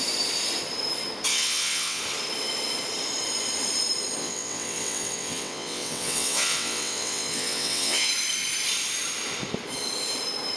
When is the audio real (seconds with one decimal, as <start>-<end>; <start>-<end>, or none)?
0.0-1.3; 2.0-4.2; 8.1-10.6